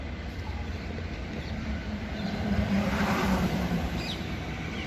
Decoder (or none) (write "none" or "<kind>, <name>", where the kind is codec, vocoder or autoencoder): vocoder, BigVGAN v2